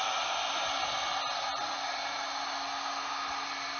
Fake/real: real